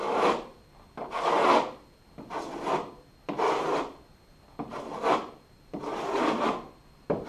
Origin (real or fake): real